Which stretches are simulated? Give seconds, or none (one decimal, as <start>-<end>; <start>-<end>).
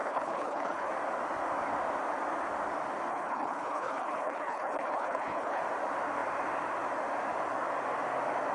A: 0.0-0.9; 3.1-5.6